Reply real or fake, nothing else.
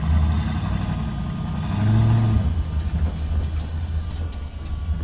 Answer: real